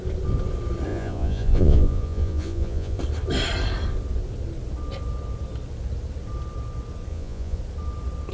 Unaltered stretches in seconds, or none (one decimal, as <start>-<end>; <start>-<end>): 0.0-0.9; 3.0-7.1; 7.6-8.3